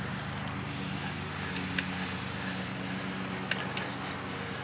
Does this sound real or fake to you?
real